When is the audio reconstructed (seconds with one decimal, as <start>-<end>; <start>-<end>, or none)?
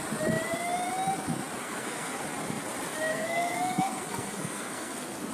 1.6-2.2; 3.1-5.3